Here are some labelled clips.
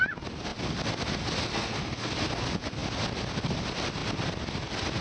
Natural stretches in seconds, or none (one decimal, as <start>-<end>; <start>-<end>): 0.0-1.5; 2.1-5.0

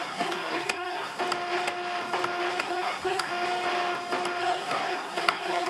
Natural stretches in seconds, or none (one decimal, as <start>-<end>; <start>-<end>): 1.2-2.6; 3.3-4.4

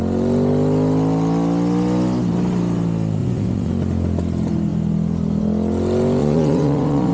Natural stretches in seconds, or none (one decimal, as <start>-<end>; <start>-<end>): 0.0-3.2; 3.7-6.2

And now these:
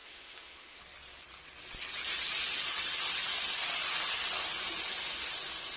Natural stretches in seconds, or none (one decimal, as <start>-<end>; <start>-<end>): 0.8-5.8

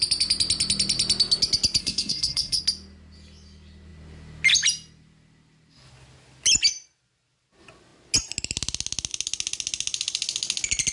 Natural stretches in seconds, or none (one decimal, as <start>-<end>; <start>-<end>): 0.0-1.8; 2.6-10.9

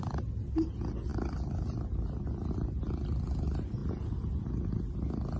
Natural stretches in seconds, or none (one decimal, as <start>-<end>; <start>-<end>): 0.0-3.8; 4.7-5.4

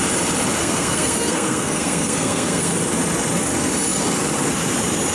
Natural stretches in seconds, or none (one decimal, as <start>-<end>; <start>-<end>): 0.0-0.6; 2.7-5.1

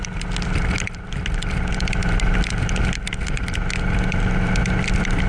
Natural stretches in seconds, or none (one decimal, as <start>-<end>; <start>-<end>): 0.0-5.3